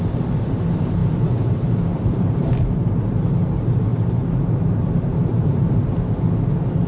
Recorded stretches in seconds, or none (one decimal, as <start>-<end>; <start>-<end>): 0.0-1.0; 2.6-3.9; 5.7-6.9